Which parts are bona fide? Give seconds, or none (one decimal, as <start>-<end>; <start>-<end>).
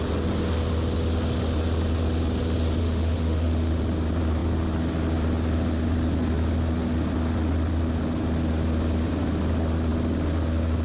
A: 0.0-2.8; 3.8-10.8